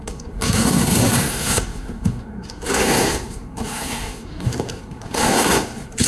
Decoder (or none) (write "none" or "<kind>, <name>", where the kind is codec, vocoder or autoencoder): codec, SNAC